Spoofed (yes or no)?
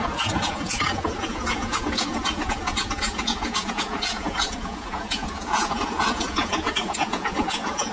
yes